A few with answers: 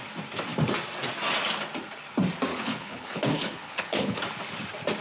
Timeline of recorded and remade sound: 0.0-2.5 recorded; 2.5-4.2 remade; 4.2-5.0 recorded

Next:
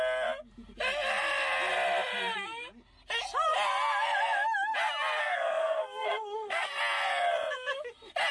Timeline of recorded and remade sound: 0.0-5.2 recorded; 5.2-6.7 remade; 6.7-8.3 recorded

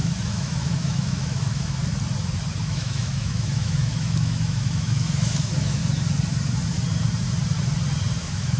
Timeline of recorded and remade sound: 0.0-1.8 remade; 1.8-2.6 recorded; 2.6-5.8 remade; 5.8-8.2 recorded; 8.2-8.6 remade